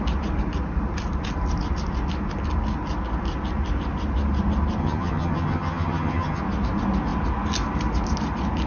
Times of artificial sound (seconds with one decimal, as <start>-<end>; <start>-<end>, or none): 4.8-6.4